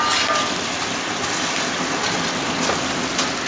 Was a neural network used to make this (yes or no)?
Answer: no